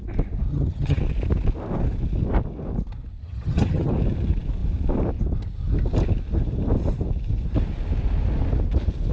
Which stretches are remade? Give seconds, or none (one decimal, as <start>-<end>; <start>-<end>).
0.5-1.0; 3.2-3.9